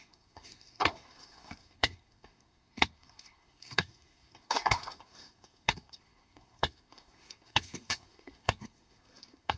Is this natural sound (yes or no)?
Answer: no